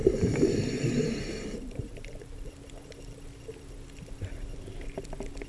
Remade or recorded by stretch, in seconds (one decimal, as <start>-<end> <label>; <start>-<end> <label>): 0.0-2.5 remade; 2.5-5.5 recorded